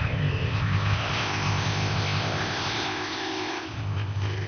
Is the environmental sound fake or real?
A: fake